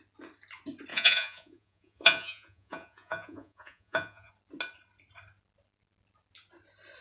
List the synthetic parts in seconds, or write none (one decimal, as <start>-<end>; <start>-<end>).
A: 0.9-4.3